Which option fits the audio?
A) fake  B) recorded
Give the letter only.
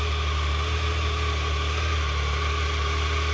B